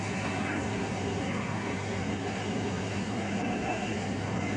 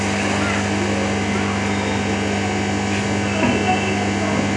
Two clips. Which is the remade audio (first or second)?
first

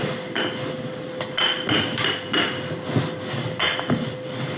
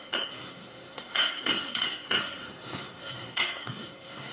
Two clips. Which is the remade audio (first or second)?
second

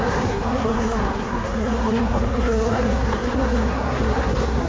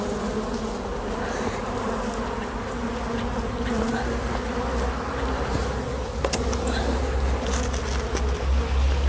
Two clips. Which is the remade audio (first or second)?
first